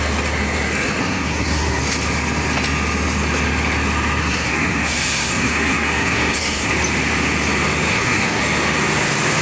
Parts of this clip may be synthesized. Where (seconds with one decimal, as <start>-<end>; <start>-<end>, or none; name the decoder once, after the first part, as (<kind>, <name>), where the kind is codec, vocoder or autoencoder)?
1.0-1.8 (codec, SNAC); 4.2-6.7; 7.9-8.4